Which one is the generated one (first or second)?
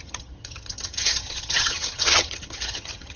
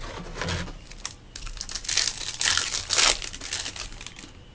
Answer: first